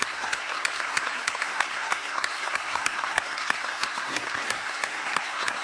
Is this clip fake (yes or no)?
yes